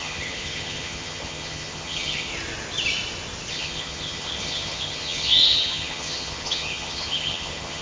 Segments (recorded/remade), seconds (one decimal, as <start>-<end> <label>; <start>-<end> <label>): 0.0-2.3 remade; 2.3-3.5 recorded; 3.5-7.8 remade